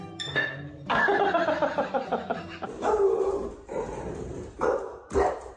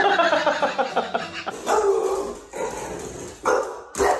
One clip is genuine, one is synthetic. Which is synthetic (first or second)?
first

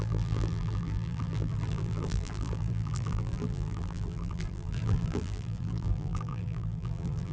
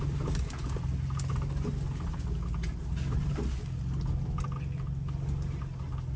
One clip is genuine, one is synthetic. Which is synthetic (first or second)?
first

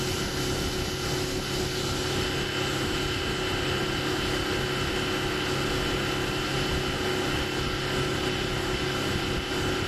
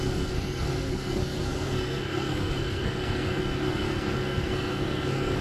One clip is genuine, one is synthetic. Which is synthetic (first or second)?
second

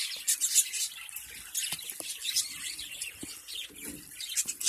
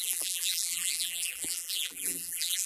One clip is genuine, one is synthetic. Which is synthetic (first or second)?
second